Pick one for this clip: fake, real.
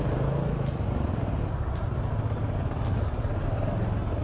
real